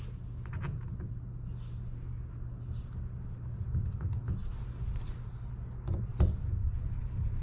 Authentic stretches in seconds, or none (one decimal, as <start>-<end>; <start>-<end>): 0.0-4.4; 5.5-6.1